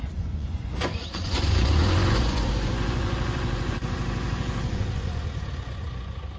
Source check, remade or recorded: remade